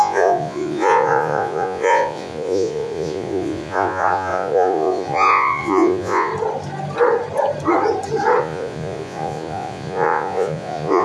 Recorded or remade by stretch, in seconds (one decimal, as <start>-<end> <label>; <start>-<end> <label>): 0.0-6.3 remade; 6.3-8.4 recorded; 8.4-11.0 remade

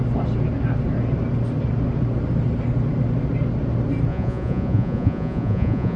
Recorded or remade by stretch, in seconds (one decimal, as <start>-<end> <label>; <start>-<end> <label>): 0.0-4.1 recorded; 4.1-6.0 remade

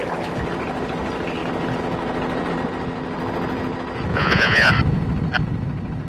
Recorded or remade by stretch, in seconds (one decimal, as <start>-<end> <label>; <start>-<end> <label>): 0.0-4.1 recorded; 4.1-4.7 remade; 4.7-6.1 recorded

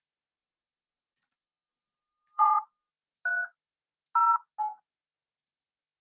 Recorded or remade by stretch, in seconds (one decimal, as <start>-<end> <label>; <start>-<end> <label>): 0.0-0.4 recorded; 0.4-2.9 remade; 2.9-6.0 recorded